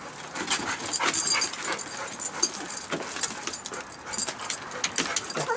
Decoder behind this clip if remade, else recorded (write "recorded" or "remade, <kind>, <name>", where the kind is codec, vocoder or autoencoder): recorded